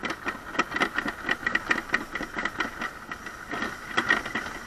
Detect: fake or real real